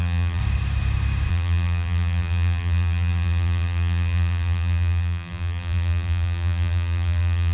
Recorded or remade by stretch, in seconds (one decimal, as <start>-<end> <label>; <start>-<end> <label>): 0.0-0.4 remade; 0.4-1.3 recorded; 1.3-7.5 remade